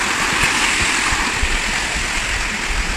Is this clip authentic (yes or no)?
yes